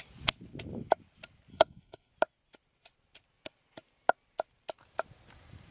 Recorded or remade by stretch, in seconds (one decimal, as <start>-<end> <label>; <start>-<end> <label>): 0.0-1.5 recorded; 1.5-2.1 remade; 2.1-5.7 recorded